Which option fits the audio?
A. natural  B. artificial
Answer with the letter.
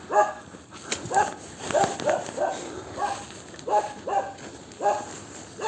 A